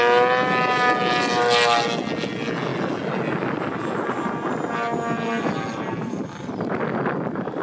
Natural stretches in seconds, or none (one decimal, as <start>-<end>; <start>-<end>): 0.0-7.6